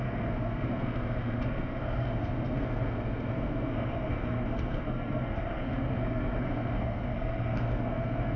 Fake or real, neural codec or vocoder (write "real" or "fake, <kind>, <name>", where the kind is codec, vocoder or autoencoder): fake, codec, SNAC